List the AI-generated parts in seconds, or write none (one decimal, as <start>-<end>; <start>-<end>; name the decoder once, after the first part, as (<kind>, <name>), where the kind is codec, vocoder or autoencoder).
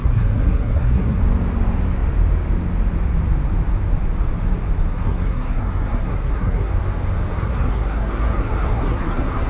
0.0-1.2 (codec, SNAC); 4.9-6.7; 7.3-9.5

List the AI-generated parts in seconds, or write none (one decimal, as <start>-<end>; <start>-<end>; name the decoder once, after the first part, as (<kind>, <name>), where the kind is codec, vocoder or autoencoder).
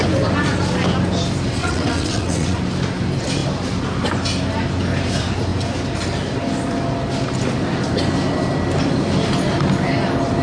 1.6-2.6 (vocoder, WaveNeXt)